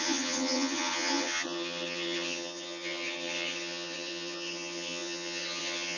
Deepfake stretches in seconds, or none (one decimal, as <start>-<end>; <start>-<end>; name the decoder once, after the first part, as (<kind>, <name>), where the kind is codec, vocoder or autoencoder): 0.0-6.0 (vocoder, HiFi-GAN)